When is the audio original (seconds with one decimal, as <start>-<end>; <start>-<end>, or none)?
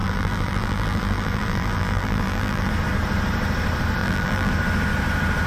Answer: 2.7-4.0; 4.5-5.5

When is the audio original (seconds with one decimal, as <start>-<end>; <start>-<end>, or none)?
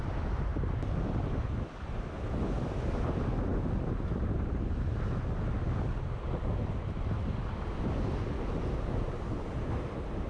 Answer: 0.0-10.3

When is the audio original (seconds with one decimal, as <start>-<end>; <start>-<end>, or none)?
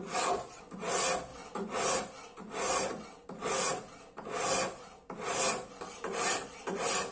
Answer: 0.0-7.1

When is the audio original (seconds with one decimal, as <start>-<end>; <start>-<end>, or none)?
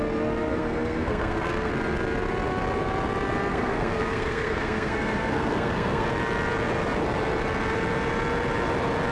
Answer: 0.0-0.5; 1.7-3.5; 6.1-9.1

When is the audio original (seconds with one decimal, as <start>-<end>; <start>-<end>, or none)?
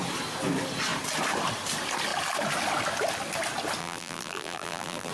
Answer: 0.0-3.8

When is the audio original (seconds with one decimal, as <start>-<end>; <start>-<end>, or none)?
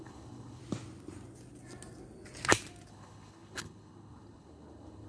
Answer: 0.6-2.9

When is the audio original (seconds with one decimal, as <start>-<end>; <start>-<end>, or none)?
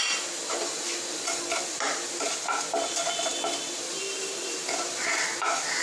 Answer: 0.0-5.8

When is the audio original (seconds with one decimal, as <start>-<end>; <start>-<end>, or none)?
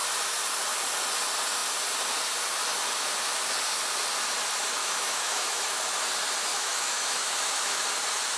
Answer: 0.0-4.8; 5.8-6.5; 7.8-8.4